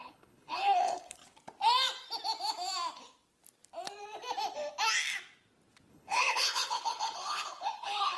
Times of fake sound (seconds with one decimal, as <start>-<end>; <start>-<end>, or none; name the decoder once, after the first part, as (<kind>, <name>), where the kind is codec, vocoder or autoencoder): 0.0-1.2 (codec, HILCodec); 5.9-8.2